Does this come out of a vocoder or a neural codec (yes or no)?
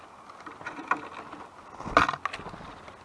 no